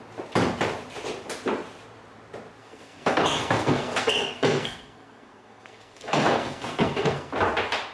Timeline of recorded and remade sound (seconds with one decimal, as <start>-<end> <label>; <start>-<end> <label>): 0.0-2.6 recorded; 2.6-7.3 remade; 7.3-7.9 recorded